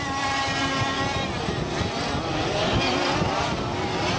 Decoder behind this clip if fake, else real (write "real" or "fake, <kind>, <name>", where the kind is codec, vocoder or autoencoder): real